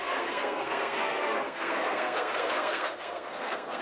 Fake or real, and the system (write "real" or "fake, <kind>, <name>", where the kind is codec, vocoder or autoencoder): fake, codec, SNAC